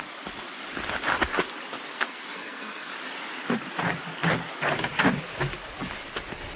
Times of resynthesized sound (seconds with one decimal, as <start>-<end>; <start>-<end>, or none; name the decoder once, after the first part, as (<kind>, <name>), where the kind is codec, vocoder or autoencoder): 1.9-2.9 (codec, SNAC)